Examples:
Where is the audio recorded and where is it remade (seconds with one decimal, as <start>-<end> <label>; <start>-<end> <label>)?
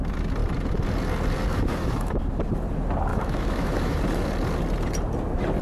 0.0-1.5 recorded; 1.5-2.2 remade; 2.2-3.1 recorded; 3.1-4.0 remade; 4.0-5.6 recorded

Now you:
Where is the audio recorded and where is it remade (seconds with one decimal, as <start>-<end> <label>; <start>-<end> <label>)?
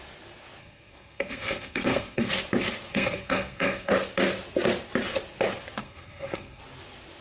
0.0-0.6 recorded; 0.6-2.3 remade; 2.3-2.9 recorded; 2.9-3.9 remade; 3.9-5.8 recorded; 5.8-6.6 remade; 6.6-7.2 recorded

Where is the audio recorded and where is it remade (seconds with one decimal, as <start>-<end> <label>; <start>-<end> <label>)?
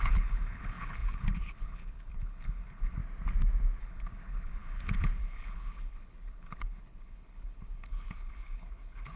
0.0-3.0 remade; 3.0-3.8 recorded; 3.8-9.2 remade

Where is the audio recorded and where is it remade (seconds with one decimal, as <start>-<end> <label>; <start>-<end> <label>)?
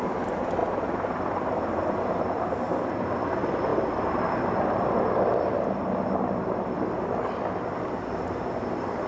0.0-9.1 recorded